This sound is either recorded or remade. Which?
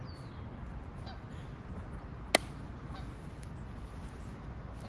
recorded